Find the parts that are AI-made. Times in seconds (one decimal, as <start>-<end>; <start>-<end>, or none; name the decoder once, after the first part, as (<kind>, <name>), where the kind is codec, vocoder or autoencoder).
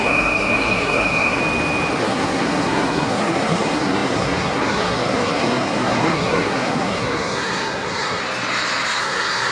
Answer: 0.0-1.4 (codec, SNAC); 2.0-8.2; 9.0-9.5